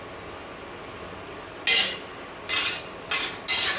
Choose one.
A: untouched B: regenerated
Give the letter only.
A